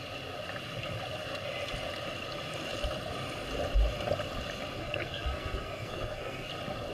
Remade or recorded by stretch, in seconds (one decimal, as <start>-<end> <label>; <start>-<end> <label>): 0.0-4.8 recorded; 4.8-6.5 remade; 6.5-6.9 recorded